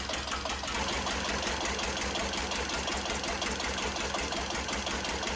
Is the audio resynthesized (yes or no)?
no